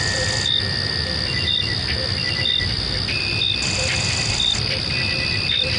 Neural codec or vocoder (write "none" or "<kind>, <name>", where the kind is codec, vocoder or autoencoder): vocoder, BigVGAN v2